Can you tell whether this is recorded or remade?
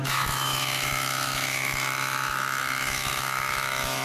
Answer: remade